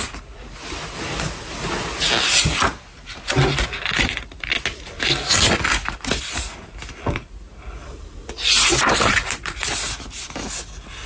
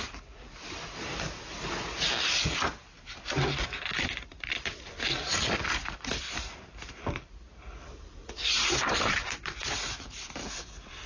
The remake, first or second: second